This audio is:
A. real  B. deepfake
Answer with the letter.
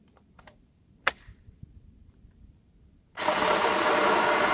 B